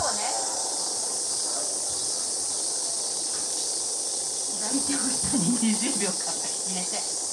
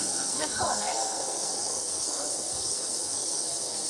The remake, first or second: second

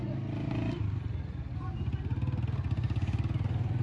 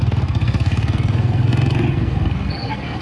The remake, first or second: second